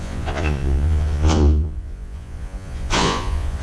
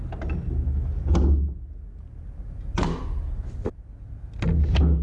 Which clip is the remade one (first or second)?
first